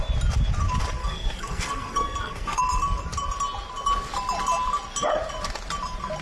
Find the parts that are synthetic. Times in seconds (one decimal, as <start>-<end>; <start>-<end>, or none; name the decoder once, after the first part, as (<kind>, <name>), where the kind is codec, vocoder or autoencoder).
1.0-2.6 (codec, SNAC)